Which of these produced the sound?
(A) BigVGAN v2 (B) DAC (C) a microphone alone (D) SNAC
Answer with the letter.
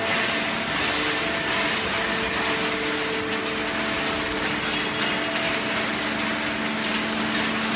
C